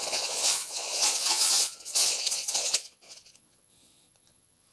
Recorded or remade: remade